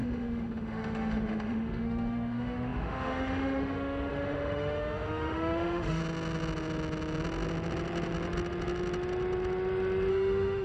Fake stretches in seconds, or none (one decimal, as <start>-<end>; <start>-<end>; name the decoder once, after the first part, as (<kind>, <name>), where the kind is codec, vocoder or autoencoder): 0.0-6.0 (autoencoder, DAC-VAE); 10.1-10.6